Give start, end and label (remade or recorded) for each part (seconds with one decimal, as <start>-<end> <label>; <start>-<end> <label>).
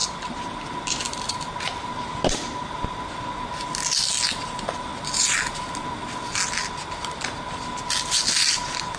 0.0-9.0 recorded